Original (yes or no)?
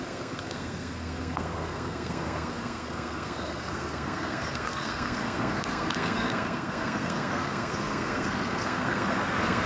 no